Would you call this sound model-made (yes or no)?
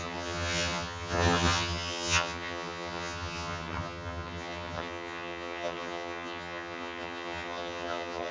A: yes